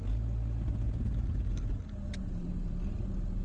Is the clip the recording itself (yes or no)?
yes